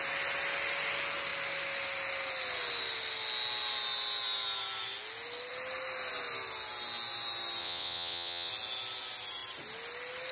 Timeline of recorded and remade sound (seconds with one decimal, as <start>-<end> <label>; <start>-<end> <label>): 0.0-7.6 recorded; 7.6-8.5 remade; 8.5-10.3 recorded